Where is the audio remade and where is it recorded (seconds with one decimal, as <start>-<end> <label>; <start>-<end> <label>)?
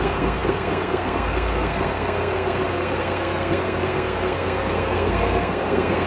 0.0-6.1 remade